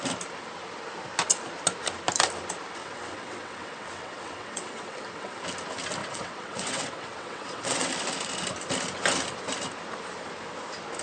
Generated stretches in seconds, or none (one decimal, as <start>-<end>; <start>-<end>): 2.8-5.4; 6.0-7.9